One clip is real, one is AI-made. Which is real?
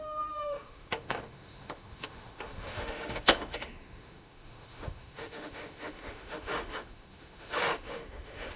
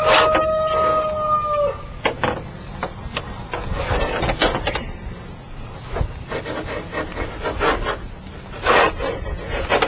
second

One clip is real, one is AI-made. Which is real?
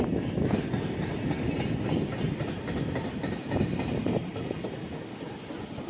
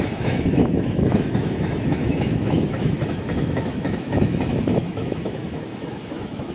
first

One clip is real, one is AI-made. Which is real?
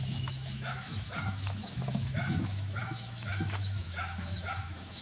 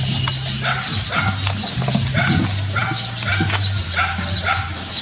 second